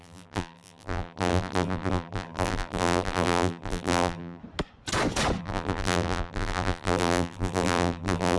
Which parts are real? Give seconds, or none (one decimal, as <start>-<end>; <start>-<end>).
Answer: 4.4-5.4